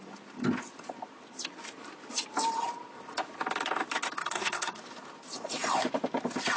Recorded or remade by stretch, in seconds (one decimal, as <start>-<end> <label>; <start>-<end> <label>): 0.0-4.2 recorded; 4.2-4.8 remade; 4.8-6.6 recorded